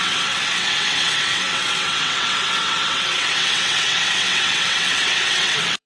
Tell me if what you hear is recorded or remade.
remade